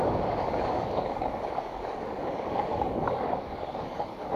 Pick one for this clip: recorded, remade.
remade